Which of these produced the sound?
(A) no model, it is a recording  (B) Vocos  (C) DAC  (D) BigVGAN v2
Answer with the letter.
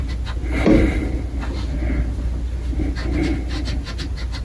A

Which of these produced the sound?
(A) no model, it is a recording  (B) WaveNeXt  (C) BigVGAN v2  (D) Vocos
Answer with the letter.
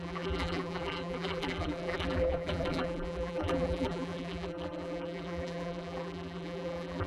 C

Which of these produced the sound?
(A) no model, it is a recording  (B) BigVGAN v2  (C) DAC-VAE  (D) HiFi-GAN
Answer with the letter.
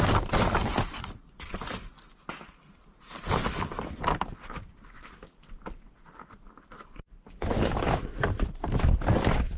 B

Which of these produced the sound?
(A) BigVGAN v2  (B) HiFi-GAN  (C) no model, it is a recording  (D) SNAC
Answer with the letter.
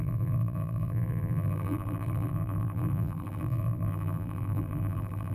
A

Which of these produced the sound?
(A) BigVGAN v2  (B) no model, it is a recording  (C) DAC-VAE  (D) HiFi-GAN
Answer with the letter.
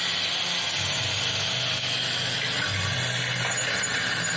B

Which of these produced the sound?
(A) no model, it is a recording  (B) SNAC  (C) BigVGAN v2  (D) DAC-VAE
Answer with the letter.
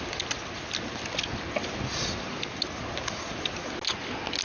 A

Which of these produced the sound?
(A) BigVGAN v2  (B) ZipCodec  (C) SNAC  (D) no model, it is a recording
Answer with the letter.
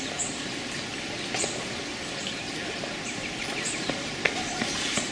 D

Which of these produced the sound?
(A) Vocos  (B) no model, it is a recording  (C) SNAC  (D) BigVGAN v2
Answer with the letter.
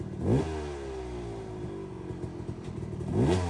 B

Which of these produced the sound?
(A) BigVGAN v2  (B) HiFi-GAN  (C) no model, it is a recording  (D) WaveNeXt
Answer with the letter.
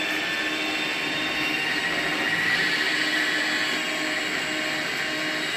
C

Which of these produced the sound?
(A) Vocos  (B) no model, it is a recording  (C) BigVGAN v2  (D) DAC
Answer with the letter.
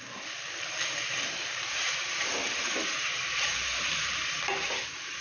C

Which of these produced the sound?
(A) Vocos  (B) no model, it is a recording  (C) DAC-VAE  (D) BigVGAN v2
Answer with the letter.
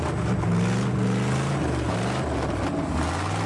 B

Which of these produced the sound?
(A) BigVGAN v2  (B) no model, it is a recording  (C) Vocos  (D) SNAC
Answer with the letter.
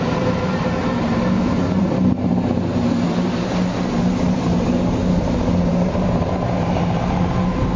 A